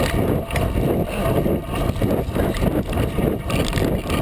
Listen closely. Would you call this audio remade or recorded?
recorded